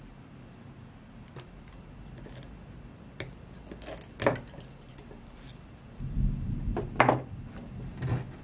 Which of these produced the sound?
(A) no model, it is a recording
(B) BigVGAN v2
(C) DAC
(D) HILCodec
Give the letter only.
A